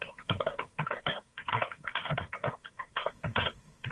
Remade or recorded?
remade